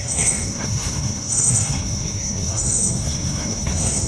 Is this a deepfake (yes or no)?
yes